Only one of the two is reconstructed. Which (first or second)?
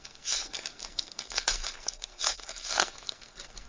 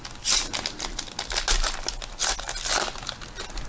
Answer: first